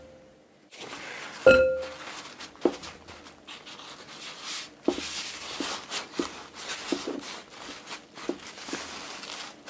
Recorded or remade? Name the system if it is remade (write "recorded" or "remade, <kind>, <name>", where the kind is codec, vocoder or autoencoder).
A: recorded